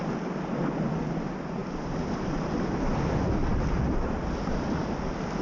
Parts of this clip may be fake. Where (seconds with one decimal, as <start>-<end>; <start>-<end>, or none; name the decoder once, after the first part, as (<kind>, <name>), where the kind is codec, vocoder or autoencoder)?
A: none

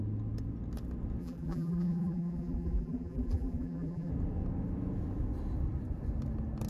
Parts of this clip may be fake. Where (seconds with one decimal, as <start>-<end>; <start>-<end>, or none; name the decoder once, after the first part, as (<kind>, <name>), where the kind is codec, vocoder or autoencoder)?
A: 1.2-4.1 (vocoder, BigVGAN v2)